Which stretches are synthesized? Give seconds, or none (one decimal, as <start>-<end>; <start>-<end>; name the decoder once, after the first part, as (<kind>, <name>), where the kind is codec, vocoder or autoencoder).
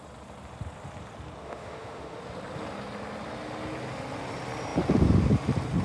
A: 1.4-2.2 (autoencoder, DAC-VAE)